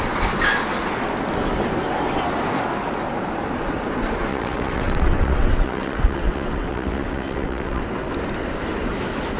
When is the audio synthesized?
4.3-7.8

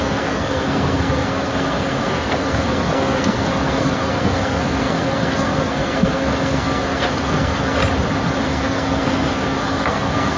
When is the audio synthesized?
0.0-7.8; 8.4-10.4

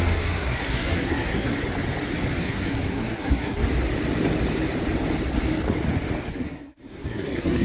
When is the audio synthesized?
0.0-1.5; 2.4-3.6; 6.3-7.6